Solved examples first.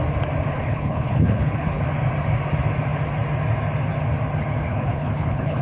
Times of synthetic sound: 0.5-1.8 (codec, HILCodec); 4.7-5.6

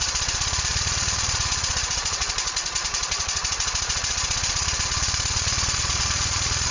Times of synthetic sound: 0.0-6.7 (vocoder, Vocos)